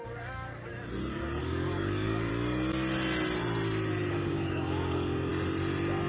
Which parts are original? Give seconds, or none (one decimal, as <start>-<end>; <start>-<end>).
0.7-1.4; 2.3-4.1; 5.3-6.1